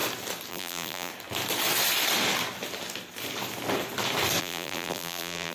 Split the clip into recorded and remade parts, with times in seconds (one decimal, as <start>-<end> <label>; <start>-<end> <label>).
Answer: 0.0-0.5 recorded; 0.5-1.1 remade; 1.1-4.4 recorded; 4.4-5.5 remade